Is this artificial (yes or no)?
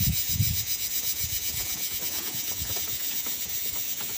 yes